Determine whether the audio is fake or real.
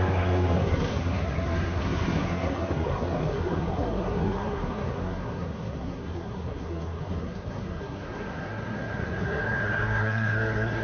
fake